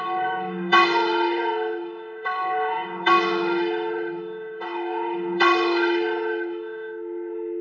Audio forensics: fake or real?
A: fake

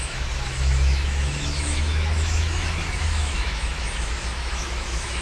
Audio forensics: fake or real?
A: fake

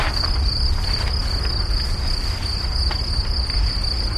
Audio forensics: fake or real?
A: real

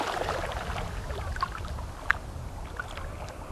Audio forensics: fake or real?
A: real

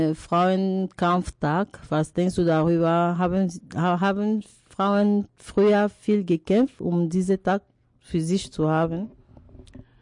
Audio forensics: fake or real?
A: real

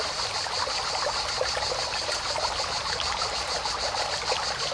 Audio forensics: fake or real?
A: real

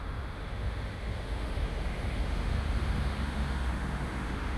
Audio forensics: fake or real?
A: fake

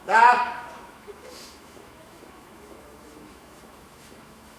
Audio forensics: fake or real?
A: fake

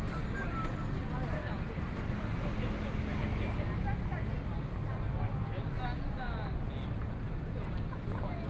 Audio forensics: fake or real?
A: real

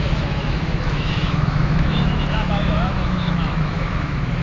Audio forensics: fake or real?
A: fake